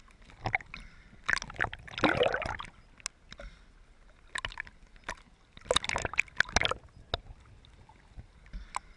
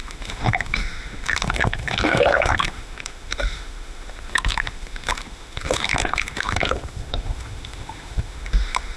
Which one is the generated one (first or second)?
second